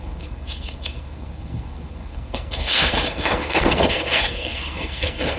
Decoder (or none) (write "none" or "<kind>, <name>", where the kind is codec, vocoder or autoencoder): codec, SNAC